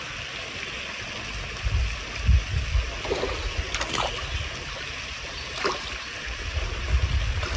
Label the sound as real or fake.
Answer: real